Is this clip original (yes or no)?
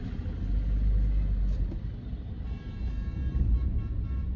yes